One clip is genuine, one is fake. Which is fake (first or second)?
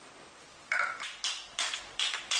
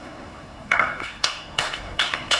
second